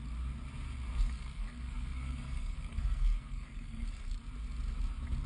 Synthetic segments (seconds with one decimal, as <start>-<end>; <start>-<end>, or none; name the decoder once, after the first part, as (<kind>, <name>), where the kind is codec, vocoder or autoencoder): 0.9-4.1 (codec, SNAC)